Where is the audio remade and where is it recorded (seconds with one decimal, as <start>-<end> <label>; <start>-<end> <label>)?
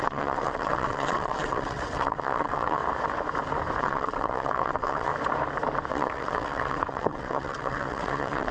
0.0-2.8 remade; 2.8-3.8 recorded; 3.8-5.1 remade; 5.1-5.9 recorded; 5.9-8.5 remade